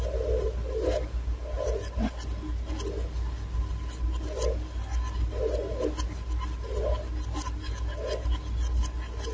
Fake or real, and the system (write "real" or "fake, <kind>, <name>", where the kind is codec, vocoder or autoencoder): real